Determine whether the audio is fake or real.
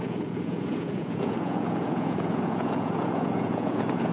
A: fake